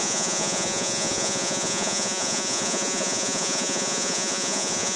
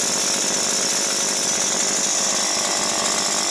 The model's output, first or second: first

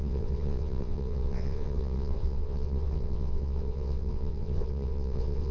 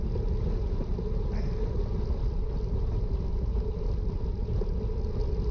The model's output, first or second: first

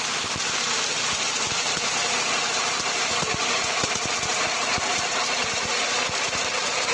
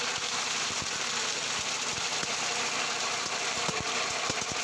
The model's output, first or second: first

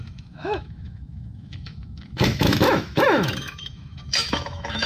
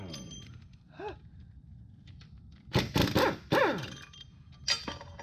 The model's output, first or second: first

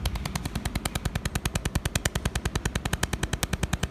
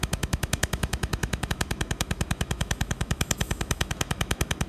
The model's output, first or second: second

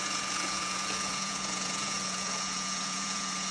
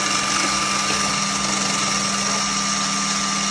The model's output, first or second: first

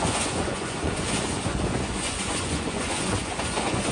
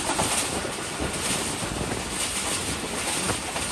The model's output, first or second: first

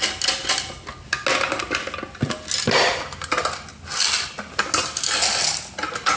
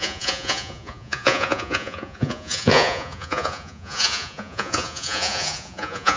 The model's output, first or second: second